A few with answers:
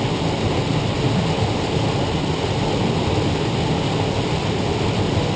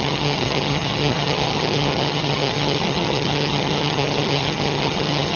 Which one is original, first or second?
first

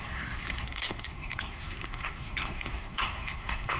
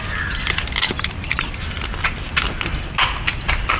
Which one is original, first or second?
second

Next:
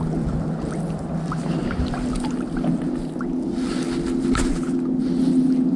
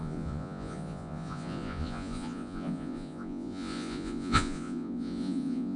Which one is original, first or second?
first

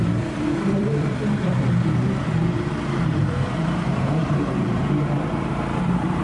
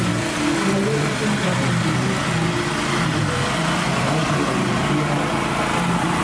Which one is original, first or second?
second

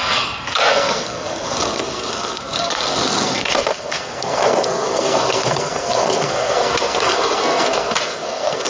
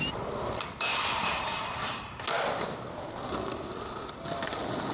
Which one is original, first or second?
second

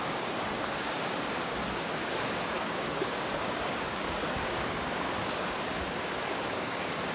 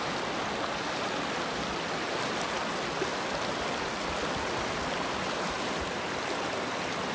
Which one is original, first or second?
second